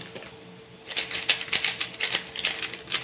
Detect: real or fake real